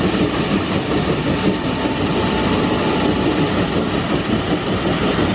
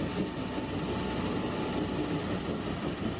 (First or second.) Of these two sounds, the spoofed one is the first